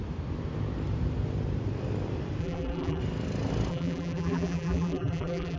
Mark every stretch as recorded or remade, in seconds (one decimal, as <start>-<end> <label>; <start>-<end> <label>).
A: 0.0-2.4 recorded; 2.4-3.0 remade; 3.0-3.7 recorded; 3.7-5.6 remade